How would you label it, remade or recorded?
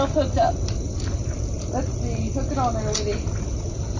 recorded